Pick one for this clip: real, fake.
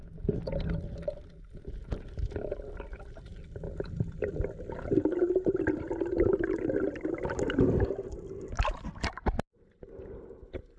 real